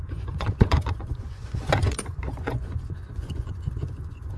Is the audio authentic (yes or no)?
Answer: no